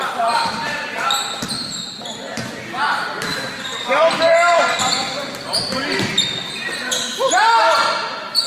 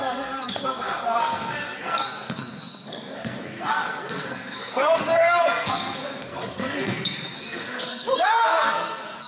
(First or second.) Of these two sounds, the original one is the first